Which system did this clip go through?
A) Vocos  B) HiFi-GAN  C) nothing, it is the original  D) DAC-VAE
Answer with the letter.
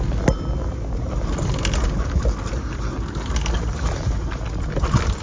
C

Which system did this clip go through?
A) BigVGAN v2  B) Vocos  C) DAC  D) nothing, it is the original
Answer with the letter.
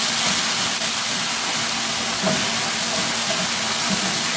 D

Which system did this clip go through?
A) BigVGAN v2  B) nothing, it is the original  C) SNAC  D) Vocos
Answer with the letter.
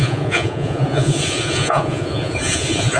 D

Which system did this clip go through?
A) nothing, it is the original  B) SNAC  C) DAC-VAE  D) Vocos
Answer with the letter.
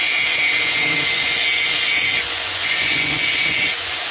D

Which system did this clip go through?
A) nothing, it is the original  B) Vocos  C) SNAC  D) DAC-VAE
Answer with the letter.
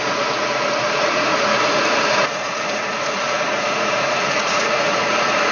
B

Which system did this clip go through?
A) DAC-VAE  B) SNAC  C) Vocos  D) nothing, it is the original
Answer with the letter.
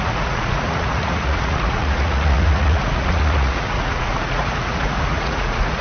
C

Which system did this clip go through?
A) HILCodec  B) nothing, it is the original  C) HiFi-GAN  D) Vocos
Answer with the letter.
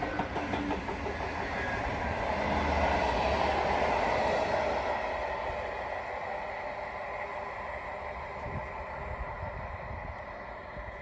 B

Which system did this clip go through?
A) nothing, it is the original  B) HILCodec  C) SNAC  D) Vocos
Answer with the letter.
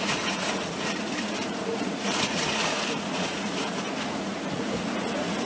D